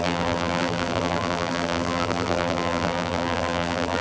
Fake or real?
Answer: fake